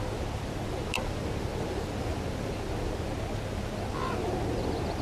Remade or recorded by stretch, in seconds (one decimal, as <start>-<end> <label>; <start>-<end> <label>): 0.0-5.0 recorded